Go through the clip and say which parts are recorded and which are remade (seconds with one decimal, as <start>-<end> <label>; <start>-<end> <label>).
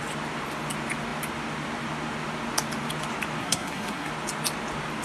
0.0-3.4 recorded; 3.4-4.1 remade; 4.1-5.0 recorded